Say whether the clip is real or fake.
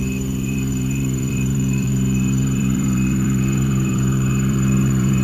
fake